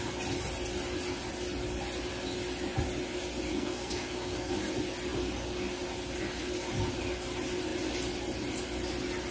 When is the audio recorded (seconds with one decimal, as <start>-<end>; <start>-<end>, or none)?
0.0-3.5; 4.5-9.3

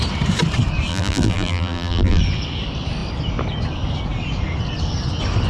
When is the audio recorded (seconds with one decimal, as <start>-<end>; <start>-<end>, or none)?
0.0-0.9; 2.2-5.5